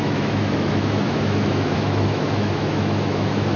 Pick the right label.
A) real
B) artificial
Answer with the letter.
B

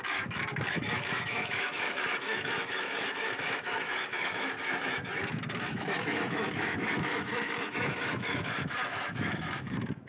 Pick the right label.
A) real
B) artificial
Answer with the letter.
B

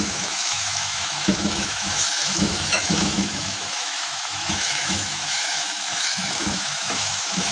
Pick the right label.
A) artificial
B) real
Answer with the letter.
A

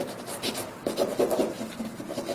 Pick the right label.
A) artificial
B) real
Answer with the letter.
B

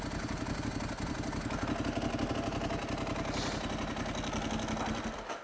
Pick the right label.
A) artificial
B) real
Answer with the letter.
B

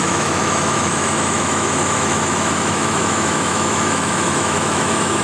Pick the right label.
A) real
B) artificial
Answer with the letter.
B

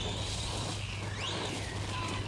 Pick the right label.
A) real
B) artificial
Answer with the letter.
A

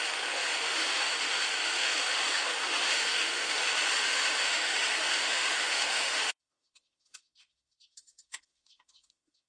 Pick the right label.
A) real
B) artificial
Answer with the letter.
B